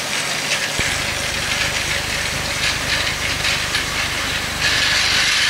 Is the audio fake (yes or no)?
no